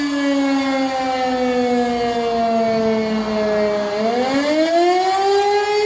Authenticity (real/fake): real